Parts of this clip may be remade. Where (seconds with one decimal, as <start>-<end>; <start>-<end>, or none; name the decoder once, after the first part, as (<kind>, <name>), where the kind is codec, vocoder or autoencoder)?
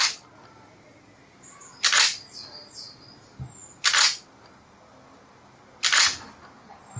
none